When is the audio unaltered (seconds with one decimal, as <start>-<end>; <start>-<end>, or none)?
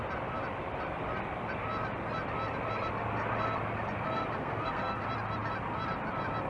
0.0-4.4; 5.0-6.5